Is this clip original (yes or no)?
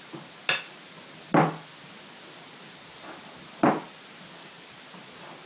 yes